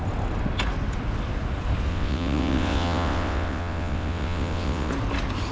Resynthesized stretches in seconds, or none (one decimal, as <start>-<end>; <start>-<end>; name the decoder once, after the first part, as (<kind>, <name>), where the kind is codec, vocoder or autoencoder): 1.9-4.9 (vocoder, WaveNeXt)